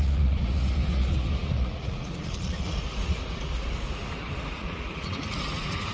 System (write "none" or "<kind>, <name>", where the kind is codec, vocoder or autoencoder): vocoder, Vocos